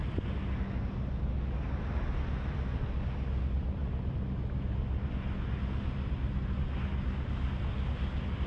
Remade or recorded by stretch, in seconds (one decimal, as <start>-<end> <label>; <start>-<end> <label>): 0.0-8.5 recorded